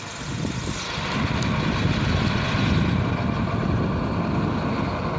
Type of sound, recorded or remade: recorded